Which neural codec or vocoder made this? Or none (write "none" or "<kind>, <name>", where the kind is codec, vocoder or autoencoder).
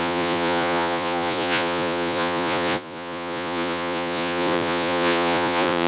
vocoder, Vocos